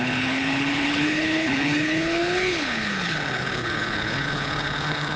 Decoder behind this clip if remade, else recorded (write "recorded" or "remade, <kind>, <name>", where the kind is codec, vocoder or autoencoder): remade, codec, HILCodec